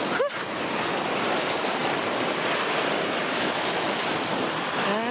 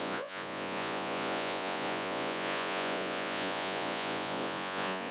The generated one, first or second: second